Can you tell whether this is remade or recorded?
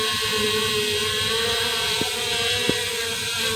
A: recorded